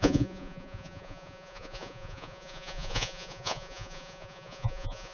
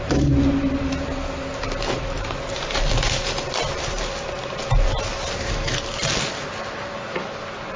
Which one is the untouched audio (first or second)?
second